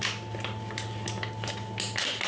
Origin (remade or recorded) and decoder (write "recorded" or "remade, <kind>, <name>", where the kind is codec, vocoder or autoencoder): recorded